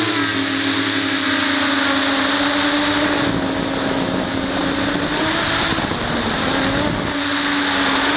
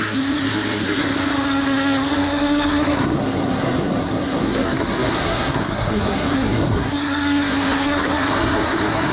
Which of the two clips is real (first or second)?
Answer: first